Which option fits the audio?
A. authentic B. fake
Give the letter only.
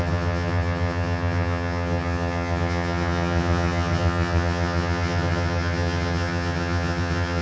B